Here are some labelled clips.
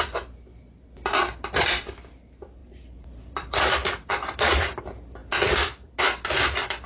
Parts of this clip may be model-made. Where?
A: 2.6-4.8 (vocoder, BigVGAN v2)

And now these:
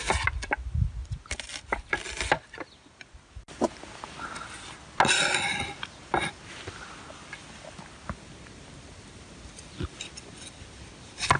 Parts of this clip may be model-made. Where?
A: none

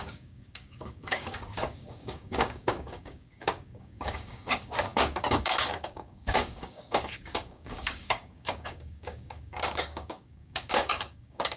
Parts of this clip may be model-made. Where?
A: 0.0-11.6 (codec, DAC)

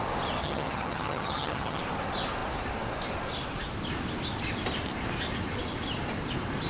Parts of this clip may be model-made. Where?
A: 0.4-1.8 (vocoder, HiFi-GAN)